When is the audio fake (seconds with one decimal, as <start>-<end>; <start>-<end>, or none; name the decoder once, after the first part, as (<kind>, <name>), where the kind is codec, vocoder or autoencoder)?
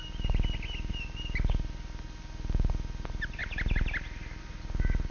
none